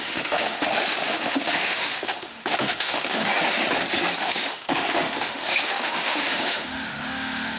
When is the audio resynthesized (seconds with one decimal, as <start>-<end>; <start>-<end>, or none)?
0.0-3.3; 4.2-7.6